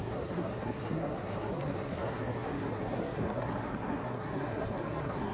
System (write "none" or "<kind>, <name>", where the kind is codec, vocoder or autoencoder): codec, SNAC